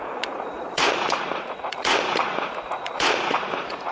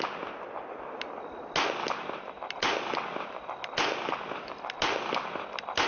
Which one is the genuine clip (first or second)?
second